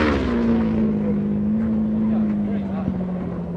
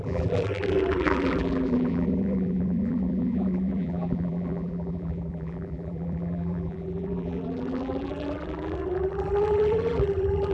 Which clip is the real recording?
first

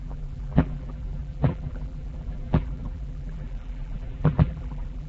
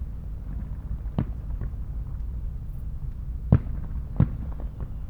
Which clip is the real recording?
second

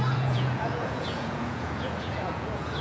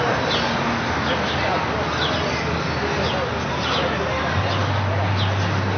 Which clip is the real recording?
second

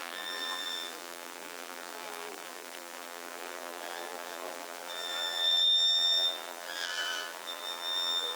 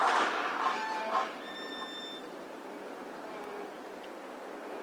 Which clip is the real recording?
second